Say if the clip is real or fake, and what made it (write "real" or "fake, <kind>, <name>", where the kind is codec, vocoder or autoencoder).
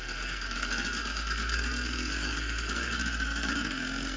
fake, codec, SNAC